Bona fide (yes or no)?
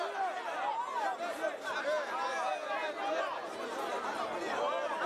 yes